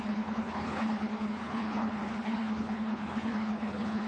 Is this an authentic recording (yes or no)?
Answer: no